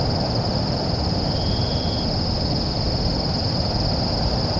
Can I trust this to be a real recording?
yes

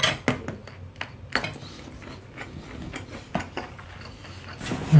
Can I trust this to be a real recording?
yes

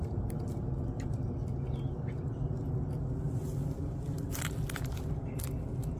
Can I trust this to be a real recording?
yes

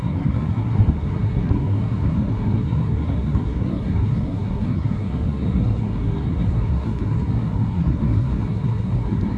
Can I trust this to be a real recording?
no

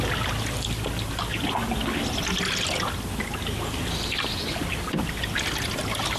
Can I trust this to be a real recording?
yes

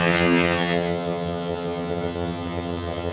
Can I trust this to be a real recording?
no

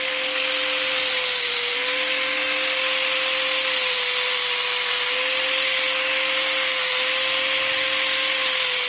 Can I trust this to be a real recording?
yes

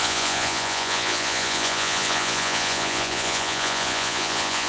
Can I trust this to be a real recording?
no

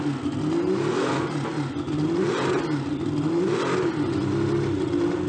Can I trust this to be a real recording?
yes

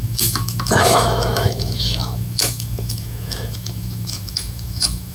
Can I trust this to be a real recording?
no